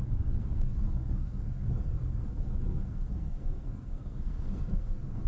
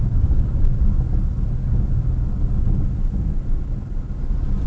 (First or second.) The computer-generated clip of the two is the first